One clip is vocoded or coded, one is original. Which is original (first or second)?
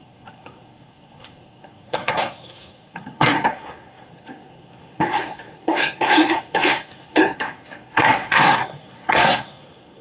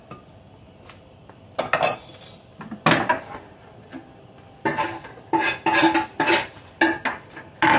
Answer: second